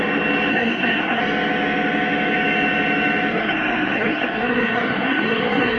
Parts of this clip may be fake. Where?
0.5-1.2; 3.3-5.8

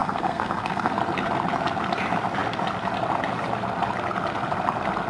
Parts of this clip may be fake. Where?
0.0-0.9